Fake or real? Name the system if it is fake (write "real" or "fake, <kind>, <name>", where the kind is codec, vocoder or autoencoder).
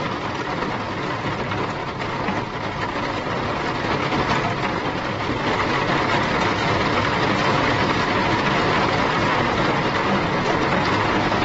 real